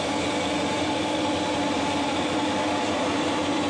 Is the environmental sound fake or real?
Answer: fake